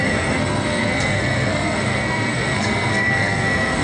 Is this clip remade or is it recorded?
remade